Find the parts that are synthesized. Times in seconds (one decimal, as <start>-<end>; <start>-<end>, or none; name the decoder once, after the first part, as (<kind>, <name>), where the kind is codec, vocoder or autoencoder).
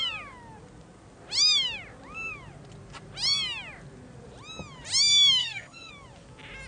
5.4-5.9 (codec, SNAC)